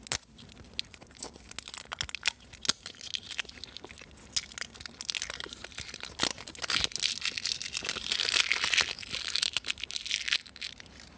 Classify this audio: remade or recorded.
recorded